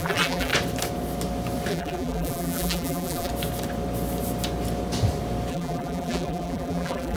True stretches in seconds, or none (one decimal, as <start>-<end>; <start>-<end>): 0.5-1.7; 3.3-5.5

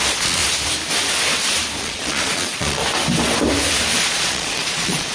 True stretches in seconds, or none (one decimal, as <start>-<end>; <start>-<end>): 0.4-1.8; 2.8-4.0

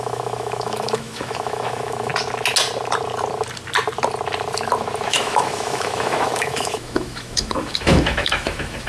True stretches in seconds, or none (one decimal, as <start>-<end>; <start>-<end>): 2.1-5.1

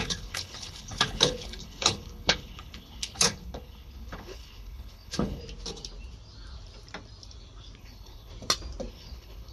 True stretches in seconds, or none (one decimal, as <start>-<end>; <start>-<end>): 5.4-7.8; 8.3-8.9

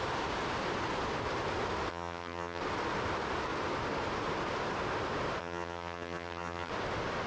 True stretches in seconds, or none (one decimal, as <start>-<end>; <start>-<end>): 0.0-1.9; 2.6-5.4; 6.7-7.3

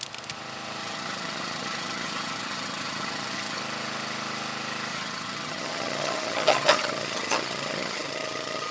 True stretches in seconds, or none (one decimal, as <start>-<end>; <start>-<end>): 0.0-0.8; 3.6-4.9

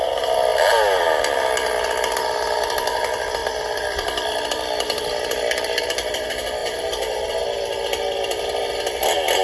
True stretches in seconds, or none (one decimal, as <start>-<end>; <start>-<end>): 0.0-9.4